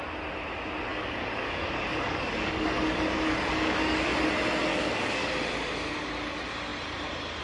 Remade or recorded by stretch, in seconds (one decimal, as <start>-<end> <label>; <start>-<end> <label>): 0.0-0.9 recorded; 0.9-4.3 remade; 4.3-4.7 recorded; 4.7-5.3 remade; 5.3-7.4 recorded